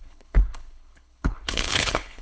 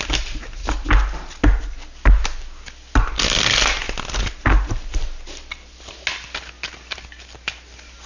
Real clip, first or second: second